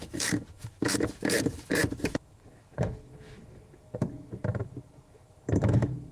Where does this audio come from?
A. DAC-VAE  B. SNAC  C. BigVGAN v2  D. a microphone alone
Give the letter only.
A